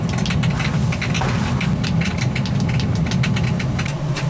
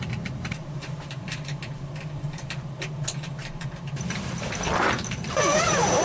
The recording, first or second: first